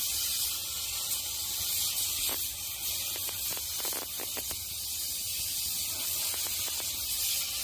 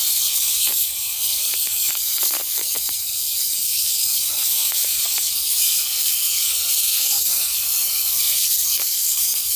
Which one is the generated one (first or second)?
second